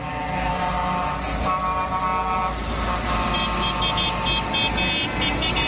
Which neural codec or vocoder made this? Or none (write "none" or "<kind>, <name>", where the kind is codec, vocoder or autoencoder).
none